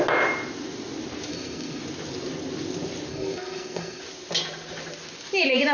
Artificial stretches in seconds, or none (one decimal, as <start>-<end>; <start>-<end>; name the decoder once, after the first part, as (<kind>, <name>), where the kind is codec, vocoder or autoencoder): 1.3-1.8 (codec, SNAC); 3.1-4.0